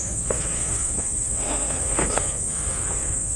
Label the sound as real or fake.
fake